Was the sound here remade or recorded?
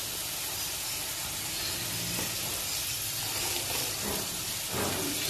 recorded